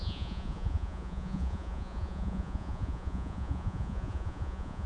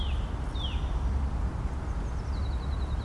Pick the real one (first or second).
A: second